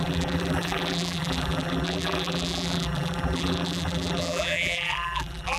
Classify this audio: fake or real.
fake